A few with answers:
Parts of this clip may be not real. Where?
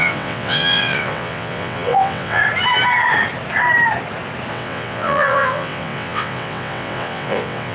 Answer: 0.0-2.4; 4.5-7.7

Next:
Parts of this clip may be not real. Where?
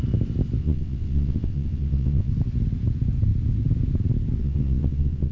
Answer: 0.6-2.3; 4.4-5.3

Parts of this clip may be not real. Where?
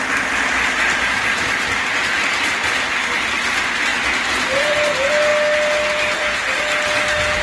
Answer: none